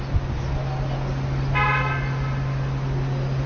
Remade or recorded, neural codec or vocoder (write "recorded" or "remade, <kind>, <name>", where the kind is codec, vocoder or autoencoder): recorded